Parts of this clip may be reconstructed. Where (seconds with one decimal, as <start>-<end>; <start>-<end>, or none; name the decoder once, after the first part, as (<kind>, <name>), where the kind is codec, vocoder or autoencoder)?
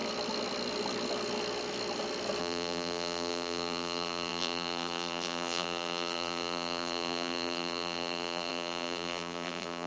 2.4-9.9 (vocoder, BigVGAN v2)